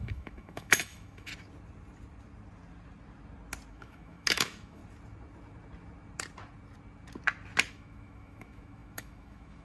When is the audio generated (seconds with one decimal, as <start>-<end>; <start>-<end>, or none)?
0.0-1.3; 3.7-4.8; 7.7-9.6